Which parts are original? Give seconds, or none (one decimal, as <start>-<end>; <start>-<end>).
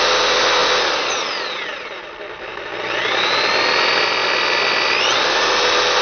0.0-6.0